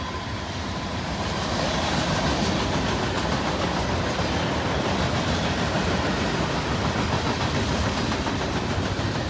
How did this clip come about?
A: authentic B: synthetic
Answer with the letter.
A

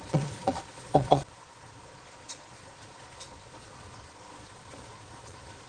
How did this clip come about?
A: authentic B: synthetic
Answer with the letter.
B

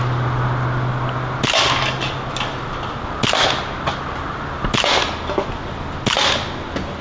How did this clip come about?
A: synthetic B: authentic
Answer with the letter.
B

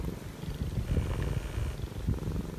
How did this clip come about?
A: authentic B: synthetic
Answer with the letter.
A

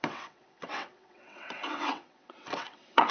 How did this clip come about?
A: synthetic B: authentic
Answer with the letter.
A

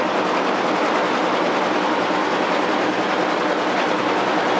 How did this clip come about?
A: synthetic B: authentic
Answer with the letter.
B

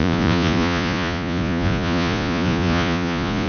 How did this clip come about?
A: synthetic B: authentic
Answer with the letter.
A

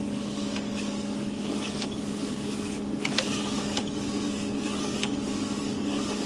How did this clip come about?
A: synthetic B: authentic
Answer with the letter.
A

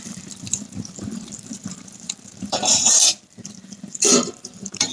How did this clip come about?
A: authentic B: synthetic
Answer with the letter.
B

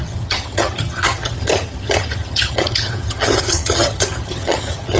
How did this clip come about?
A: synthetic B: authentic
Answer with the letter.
A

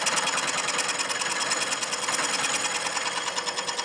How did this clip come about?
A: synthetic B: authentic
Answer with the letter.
B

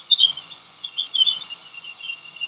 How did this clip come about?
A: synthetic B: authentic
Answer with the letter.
A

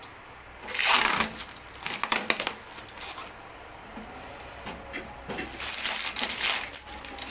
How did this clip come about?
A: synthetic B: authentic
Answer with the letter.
B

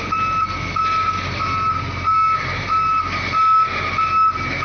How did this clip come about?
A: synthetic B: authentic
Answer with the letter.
B